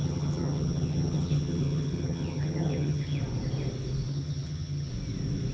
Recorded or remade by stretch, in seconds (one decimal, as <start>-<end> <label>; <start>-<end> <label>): 0.0-3.2 remade; 3.2-4.1 recorded; 4.1-4.9 remade; 4.9-5.5 recorded